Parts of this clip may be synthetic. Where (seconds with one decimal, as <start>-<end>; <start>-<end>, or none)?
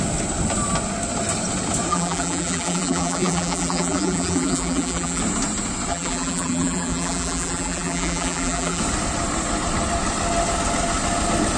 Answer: 1.9-5.2; 5.9-8.8